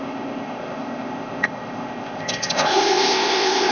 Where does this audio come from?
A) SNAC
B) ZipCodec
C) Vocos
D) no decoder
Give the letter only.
B